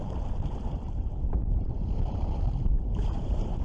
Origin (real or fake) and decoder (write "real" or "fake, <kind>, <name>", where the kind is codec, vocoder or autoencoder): fake, vocoder, BigVGAN v2